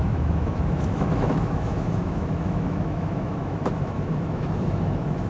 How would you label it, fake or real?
fake